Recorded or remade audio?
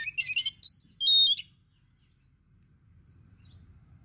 recorded